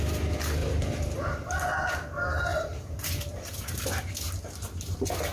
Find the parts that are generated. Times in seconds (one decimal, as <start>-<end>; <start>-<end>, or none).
0.6-1.9; 2.5-3.9

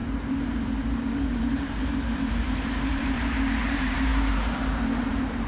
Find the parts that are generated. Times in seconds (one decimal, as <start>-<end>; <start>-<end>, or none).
0.0-5.5